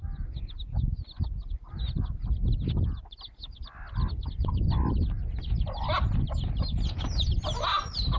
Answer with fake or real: real